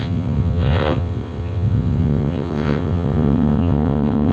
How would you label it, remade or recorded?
remade